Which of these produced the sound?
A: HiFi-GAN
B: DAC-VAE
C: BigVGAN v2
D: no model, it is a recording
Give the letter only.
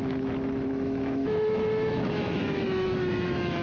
B